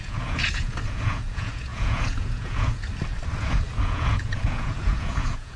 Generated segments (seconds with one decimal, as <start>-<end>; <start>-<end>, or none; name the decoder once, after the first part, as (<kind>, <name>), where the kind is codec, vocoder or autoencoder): 0.0-2.9 (vocoder, Vocos); 3.4-5.6